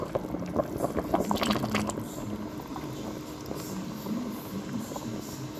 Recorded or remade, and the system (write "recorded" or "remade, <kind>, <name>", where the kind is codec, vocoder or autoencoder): recorded